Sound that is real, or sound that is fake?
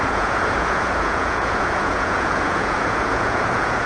fake